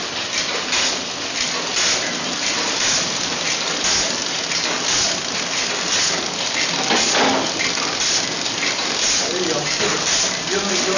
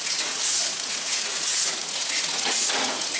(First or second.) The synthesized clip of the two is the second